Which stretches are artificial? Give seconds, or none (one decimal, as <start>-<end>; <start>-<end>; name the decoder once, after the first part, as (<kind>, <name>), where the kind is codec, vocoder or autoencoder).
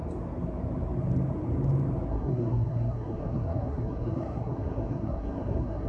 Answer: 2.1-5.9 (codec, SNAC)